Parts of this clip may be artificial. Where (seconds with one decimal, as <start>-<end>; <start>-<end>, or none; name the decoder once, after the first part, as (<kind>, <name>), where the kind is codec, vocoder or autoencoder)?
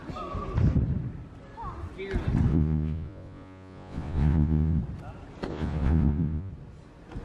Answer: 2.5-4.8 (vocoder, Vocos); 5.5-6.5